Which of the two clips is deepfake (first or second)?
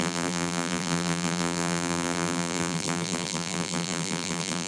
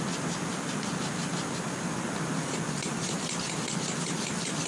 first